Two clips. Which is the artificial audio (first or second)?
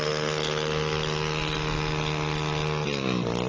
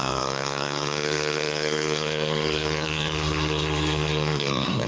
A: second